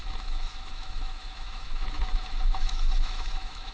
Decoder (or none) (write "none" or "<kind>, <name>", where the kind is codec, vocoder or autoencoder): autoencoder, DAC-VAE